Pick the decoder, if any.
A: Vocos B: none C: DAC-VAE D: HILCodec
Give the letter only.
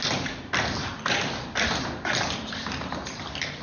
B